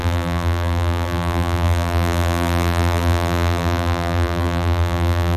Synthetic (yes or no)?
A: yes